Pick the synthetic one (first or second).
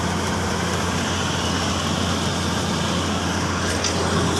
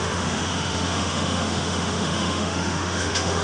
second